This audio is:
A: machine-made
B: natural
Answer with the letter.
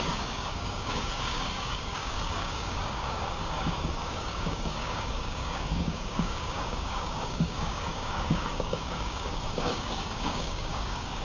A